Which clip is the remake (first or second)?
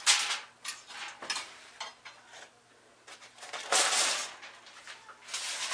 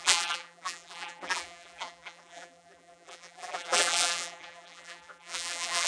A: second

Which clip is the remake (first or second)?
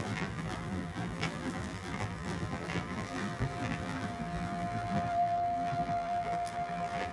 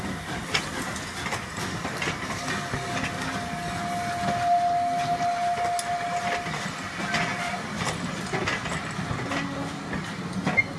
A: first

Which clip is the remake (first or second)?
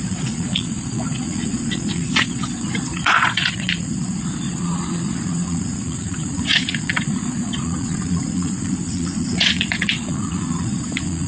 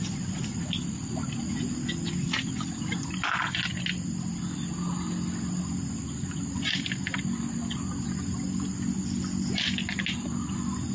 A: first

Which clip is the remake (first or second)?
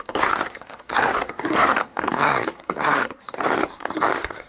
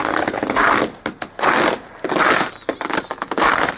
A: first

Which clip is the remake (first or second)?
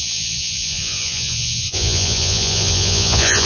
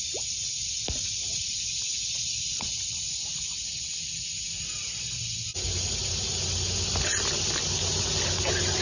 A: first